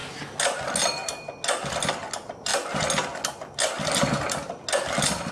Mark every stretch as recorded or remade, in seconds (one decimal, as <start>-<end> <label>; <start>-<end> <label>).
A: 0.0-5.3 recorded